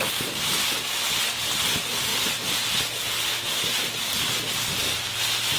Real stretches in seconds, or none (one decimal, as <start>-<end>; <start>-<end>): 0.0-5.6